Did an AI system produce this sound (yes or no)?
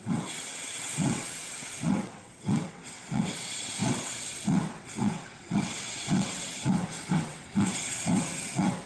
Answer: yes